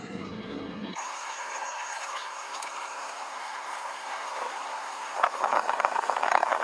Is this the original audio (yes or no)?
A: no